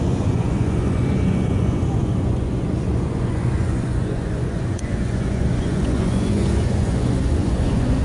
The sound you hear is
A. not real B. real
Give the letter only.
A